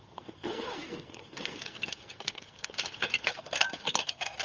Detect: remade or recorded remade